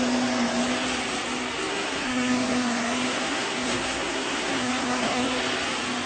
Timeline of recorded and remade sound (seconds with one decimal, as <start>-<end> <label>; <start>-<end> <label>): 0.0-1.7 recorded; 1.7-5.4 remade; 5.4-6.1 recorded